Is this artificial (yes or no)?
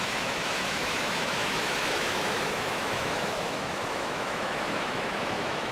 yes